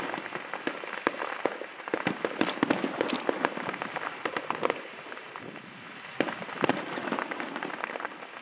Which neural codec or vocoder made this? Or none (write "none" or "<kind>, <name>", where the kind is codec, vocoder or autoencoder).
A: none